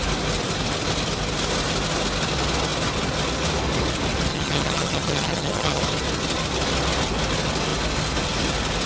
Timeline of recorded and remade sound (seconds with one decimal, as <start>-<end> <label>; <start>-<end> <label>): 0.0-4.3 recorded; 4.3-5.8 remade; 5.8-8.9 recorded